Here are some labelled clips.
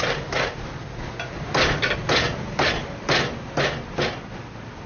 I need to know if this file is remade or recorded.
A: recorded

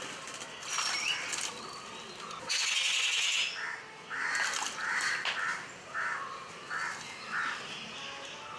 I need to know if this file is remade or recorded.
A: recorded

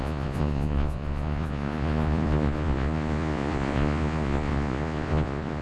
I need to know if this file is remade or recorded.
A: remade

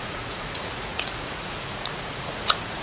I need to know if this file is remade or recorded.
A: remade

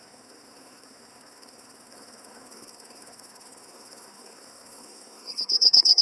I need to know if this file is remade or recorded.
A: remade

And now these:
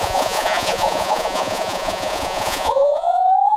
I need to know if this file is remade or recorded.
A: remade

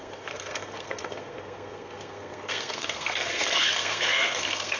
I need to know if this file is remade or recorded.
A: remade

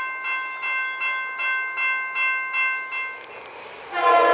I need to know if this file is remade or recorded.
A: recorded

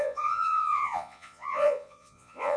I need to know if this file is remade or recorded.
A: remade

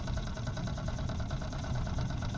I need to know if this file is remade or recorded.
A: remade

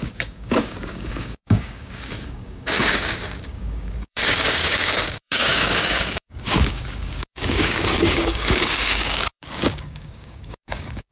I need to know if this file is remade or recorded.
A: remade